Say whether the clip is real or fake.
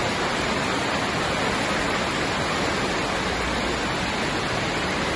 real